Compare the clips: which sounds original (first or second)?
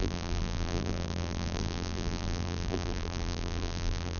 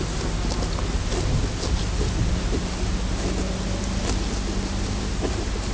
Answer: second